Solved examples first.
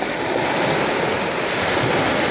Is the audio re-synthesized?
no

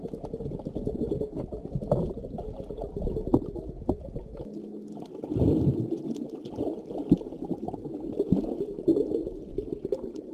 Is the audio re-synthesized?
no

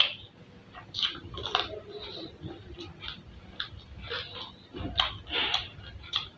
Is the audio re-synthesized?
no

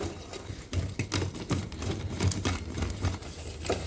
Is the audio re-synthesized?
no